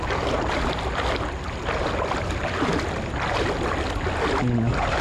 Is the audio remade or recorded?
recorded